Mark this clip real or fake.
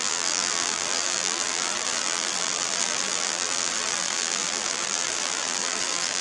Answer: fake